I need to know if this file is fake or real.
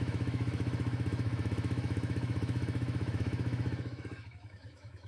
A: fake